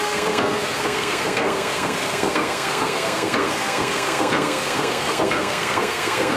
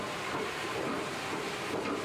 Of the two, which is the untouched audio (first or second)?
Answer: second